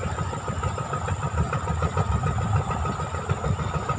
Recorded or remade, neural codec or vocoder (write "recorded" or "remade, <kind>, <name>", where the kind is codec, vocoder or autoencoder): recorded